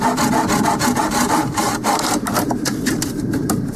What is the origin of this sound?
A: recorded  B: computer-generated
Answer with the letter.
B